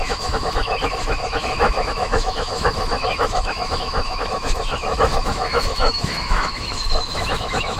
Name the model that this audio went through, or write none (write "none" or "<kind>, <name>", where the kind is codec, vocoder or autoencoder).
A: autoencoder, DAC-VAE